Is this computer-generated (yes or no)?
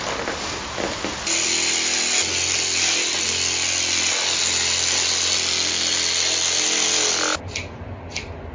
no